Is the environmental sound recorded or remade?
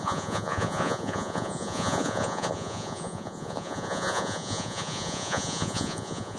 remade